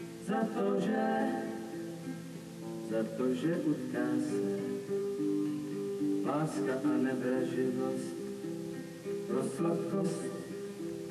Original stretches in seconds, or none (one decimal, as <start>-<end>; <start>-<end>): 0.0-5.0; 8.2-9.3; 10.7-11.1